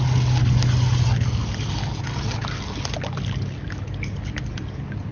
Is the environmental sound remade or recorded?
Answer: recorded